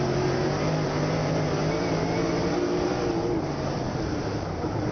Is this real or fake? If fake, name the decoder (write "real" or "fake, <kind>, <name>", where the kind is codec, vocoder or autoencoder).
fake, vocoder, BigVGAN v2